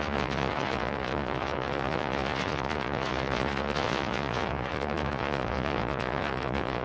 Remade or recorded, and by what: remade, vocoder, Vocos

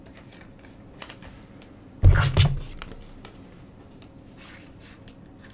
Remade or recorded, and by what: recorded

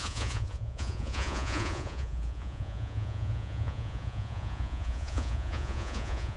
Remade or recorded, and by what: remade, vocoder, Vocos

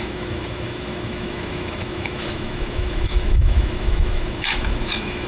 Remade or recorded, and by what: remade, autoencoder, DAC-VAE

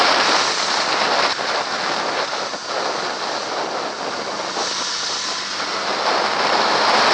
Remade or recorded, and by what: recorded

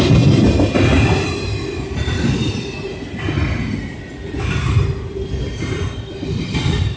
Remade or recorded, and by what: recorded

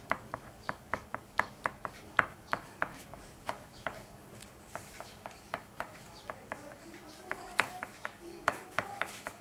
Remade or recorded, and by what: remade, codec, DAC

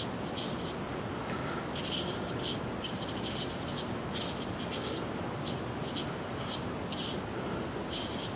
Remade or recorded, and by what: recorded